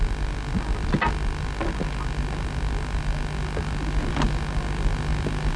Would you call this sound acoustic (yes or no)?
yes